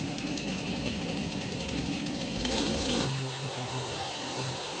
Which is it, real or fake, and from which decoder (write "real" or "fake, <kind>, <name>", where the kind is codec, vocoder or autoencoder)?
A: fake, codec, SNAC